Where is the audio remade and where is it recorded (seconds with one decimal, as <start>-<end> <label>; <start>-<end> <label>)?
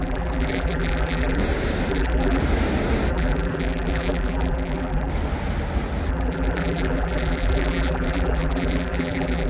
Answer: 0.0-1.4 remade; 1.4-1.9 recorded; 1.9-2.4 remade; 2.4-3.1 recorded; 3.1-5.1 remade; 5.1-6.1 recorded; 6.1-9.5 remade